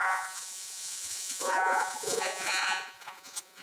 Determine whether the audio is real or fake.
fake